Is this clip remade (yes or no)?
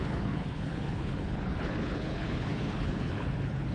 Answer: yes